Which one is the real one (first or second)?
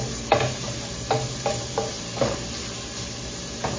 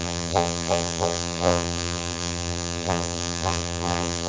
first